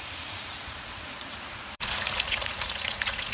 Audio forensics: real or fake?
fake